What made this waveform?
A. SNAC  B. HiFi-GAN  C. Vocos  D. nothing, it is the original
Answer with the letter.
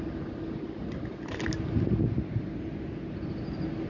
D